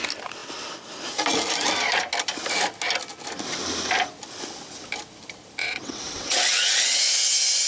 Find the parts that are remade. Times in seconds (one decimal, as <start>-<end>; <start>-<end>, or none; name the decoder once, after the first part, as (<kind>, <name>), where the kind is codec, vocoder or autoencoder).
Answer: 5.6-7.0 (vocoder, WaveNeXt)